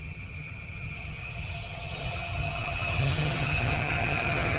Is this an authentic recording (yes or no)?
no